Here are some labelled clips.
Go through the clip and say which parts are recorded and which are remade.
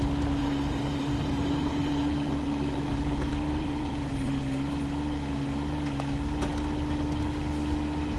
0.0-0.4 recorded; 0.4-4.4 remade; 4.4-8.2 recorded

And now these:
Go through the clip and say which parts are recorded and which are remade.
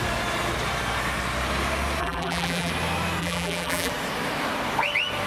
0.0-2.0 recorded; 2.0-2.7 remade; 2.7-3.2 recorded; 3.2-3.9 remade; 3.9-5.3 recorded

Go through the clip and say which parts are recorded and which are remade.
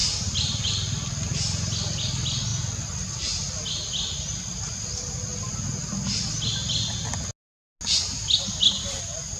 0.0-0.7 remade; 0.7-9.4 recorded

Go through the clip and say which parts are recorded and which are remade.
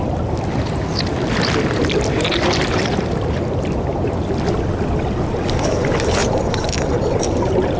0.0-0.9 recorded; 0.9-5.0 remade; 5.0-6.2 recorded; 6.2-7.8 remade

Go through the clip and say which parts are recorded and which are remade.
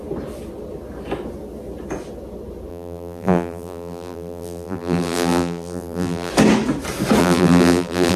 0.0-2.7 recorded; 2.7-6.3 remade; 6.3-7.2 recorded; 7.2-8.2 remade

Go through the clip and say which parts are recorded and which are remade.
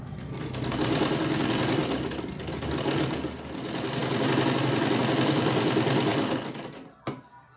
0.0-7.6 recorded